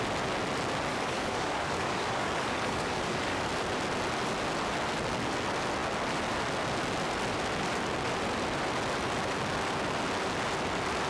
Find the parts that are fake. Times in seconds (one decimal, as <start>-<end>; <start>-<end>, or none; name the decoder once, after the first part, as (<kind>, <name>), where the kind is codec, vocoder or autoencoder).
0.9-3.4 (codec, DAC)